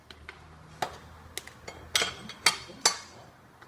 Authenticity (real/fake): real